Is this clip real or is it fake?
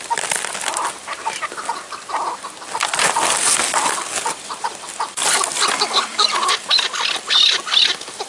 real